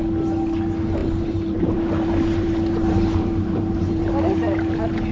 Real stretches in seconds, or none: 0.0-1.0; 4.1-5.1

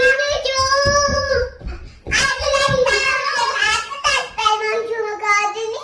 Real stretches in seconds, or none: 0.0-1.1; 4.6-5.8

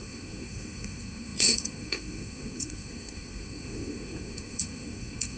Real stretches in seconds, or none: none